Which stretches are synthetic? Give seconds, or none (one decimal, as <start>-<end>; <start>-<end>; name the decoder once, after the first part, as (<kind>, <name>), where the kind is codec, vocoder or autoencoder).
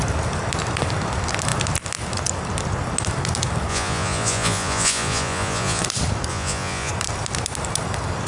3.7-5.8 (vocoder, Vocos); 6.3-6.9